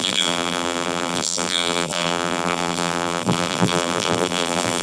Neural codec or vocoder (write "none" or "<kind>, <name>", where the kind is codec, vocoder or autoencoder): vocoder, BigVGAN v2